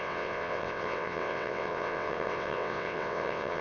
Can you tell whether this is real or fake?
fake